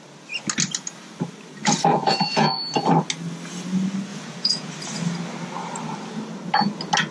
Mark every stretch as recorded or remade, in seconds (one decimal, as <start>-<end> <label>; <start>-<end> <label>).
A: 0.0-1.9 recorded; 1.9-2.6 remade; 2.6-4.1 recorded; 4.1-4.7 remade; 4.7-7.1 recorded